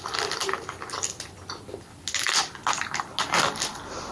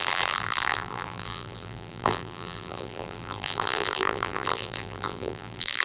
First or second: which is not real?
second